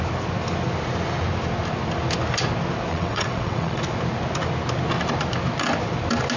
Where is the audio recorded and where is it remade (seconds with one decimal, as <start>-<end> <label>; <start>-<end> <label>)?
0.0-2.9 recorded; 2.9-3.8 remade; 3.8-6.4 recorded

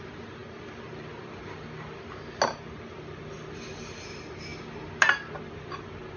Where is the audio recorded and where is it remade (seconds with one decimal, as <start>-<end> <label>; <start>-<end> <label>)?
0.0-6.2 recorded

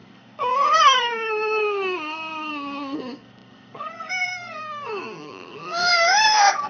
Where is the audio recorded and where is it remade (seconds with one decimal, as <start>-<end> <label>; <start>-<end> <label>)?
0.0-6.7 remade